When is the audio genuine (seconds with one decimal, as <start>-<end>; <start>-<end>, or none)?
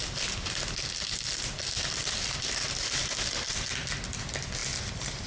0.0-5.3